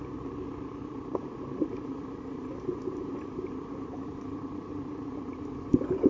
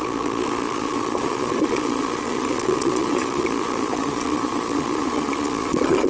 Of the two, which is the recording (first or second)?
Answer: first